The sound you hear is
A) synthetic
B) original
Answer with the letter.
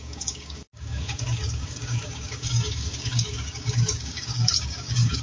A